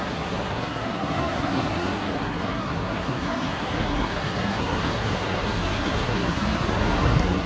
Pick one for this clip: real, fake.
fake